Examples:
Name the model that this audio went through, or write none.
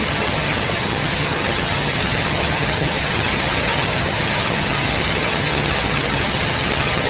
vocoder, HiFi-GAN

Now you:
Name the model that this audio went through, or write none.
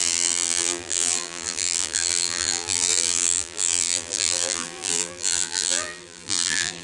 vocoder, BigVGAN v2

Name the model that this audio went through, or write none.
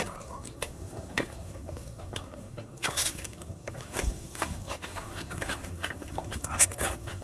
codec, SNAC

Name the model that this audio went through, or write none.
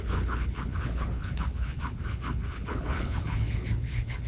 codec, HILCodec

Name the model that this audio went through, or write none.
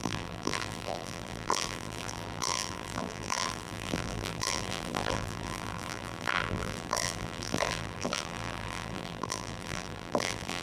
vocoder, BigVGAN v2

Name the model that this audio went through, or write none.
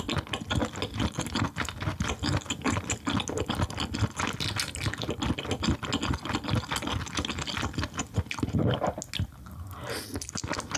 none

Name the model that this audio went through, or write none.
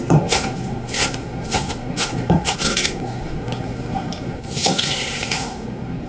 codec, SNAC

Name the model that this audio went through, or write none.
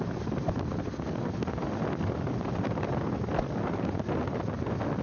none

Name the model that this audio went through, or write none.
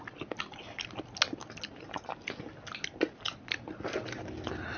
none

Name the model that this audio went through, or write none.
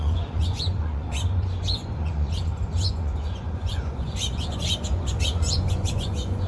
vocoder, Vocos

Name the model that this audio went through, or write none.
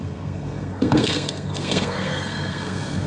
codec, SNAC